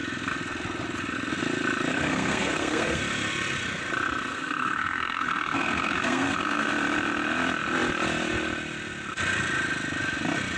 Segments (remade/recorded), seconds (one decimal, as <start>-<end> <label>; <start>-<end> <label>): 0.0-1.9 recorded; 1.9-3.0 remade; 3.0-4.3 recorded; 4.3-6.7 remade; 6.7-10.6 recorded